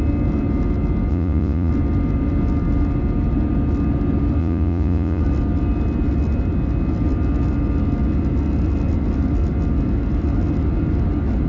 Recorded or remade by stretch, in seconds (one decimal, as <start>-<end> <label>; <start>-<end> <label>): 0.0-1.1 recorded; 1.1-1.7 remade; 1.7-4.4 recorded; 4.4-5.2 remade; 5.2-11.5 recorded